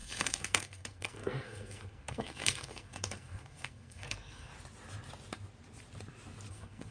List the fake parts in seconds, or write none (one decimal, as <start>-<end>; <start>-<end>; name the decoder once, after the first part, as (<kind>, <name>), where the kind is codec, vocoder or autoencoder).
0.0-4.5 (codec, SNAC); 6.5-6.9